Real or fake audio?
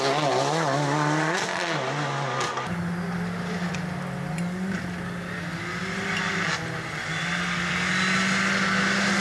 real